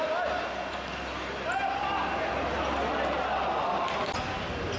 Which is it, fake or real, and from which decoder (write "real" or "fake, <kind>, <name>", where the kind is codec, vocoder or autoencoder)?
real